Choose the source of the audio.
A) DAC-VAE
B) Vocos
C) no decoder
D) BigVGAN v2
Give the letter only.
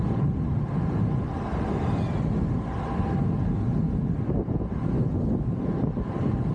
C